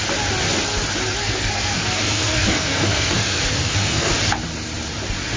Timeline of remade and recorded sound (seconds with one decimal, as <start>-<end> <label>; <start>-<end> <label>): 0.0-1.2 recorded; 1.2-4.1 remade; 4.1-5.4 recorded